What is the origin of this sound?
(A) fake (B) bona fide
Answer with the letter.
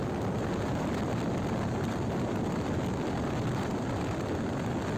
B